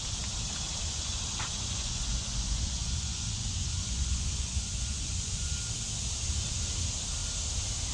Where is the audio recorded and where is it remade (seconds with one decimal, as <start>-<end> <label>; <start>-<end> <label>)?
0.0-0.8 recorded; 0.8-5.5 remade; 5.5-7.9 recorded